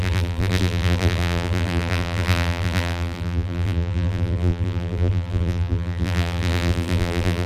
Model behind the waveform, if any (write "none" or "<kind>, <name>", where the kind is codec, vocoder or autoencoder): vocoder, BigVGAN v2